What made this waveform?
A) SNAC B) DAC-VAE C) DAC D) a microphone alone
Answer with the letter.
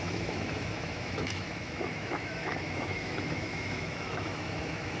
B